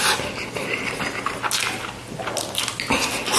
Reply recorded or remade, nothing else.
recorded